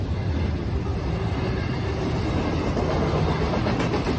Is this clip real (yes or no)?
yes